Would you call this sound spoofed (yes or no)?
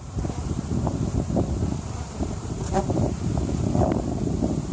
yes